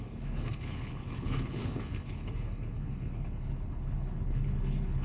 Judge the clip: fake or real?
fake